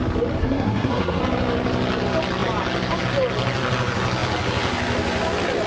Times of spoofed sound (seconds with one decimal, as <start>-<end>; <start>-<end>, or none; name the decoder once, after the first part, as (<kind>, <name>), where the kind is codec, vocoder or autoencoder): 0.4-1.2 (codec, SNAC)